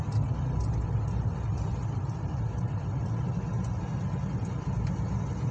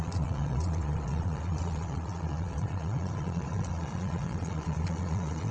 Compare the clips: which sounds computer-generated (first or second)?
second